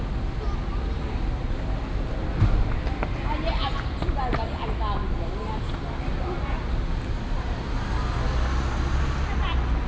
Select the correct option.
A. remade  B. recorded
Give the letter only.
B